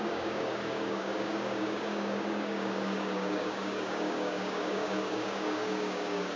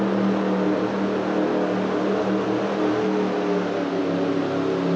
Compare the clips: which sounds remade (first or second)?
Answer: first